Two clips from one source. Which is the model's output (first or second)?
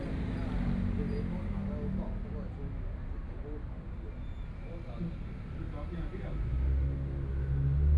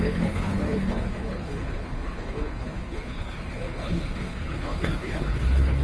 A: second